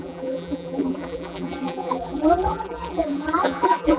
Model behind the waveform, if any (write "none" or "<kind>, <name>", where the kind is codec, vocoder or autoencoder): vocoder, BigVGAN v2